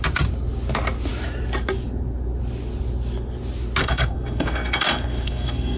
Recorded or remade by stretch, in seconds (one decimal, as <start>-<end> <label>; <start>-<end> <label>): 0.0-3.8 recorded; 3.8-5.8 remade